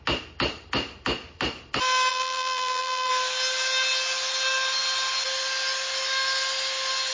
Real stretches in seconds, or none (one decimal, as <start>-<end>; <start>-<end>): 0.0-2.1; 3.1-7.1

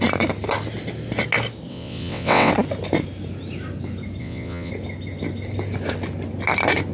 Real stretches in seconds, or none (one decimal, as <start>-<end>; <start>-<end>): 0.0-1.7; 2.5-4.2; 4.7-6.9

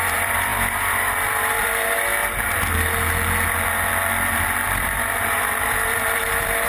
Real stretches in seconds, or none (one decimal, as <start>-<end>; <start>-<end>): 2.1-4.8

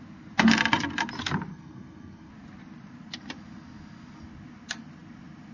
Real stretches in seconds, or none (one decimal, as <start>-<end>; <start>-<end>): 0.0-1.5; 2.3-5.5

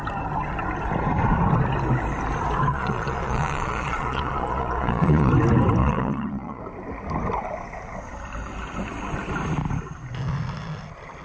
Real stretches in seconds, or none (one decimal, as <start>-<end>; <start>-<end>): 0.0-2.7; 5.3-5.8; 6.6-11.2

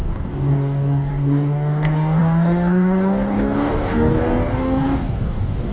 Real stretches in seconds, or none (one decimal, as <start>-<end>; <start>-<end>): none